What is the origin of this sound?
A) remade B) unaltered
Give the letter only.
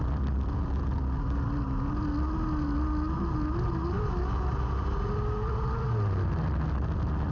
B